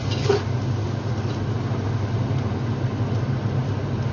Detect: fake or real real